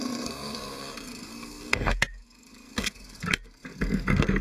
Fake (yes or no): yes